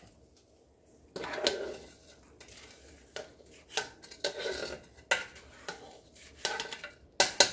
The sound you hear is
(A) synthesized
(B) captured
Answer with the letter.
B